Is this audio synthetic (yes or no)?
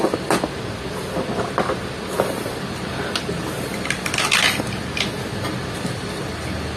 no